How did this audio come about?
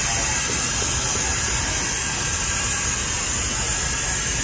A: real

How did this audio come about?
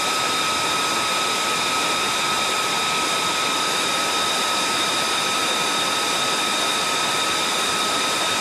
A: real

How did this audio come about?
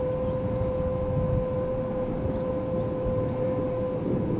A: real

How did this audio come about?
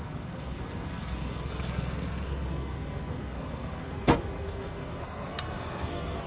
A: fake